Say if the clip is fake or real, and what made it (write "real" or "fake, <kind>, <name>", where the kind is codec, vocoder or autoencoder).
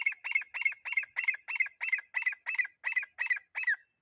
real